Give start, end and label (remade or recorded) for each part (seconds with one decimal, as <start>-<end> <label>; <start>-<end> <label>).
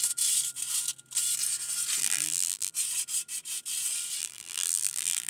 0.0-2.0 recorded; 2.0-2.7 remade; 2.7-4.2 recorded; 4.2-5.3 remade